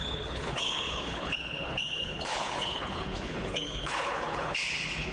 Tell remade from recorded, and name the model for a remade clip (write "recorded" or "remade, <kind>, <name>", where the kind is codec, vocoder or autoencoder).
remade, codec, HILCodec